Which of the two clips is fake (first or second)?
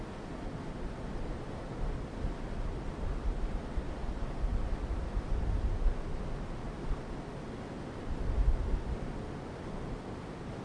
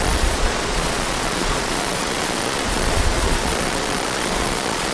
second